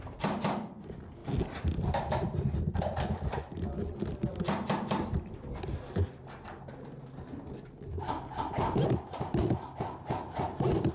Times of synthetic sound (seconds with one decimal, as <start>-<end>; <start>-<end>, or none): 1.2-2.4